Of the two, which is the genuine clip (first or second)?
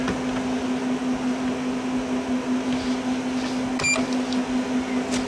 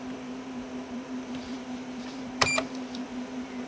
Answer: first